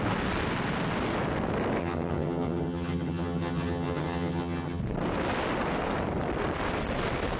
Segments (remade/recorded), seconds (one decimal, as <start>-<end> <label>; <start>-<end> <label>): 0.0-1.8 recorded; 1.8-4.8 remade; 4.8-7.4 recorded